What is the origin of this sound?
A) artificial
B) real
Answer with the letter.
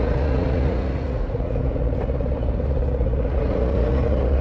A